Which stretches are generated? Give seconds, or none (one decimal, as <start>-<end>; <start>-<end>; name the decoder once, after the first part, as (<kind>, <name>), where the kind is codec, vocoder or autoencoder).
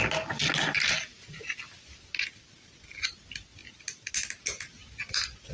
none